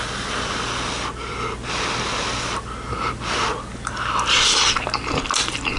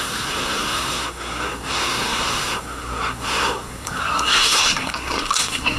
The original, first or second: first